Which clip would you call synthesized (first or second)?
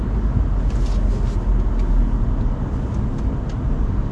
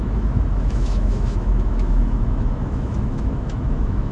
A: second